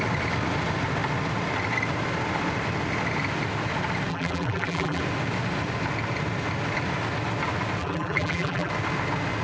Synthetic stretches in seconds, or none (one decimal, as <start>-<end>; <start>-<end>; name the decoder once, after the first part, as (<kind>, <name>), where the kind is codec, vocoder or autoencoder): 4.1-5.0 (vocoder, BigVGAN v2); 7.8-8.7